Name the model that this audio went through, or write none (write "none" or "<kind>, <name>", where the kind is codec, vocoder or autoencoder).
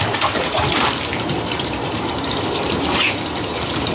vocoder, BigVGAN v2